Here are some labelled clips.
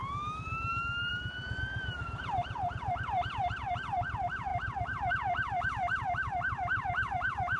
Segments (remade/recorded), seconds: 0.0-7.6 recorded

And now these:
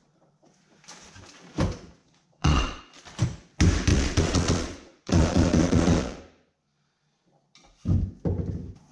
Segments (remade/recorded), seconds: 0.0-2.0 recorded; 2.0-2.8 remade; 2.8-3.9 recorded; 3.9-6.2 remade; 6.2-8.9 recorded

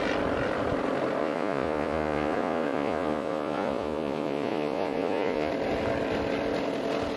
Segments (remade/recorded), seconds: 0.0-1.2 recorded; 1.2-5.5 remade; 5.5-7.2 recorded

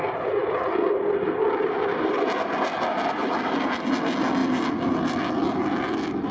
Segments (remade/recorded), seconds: 0.0-6.3 recorded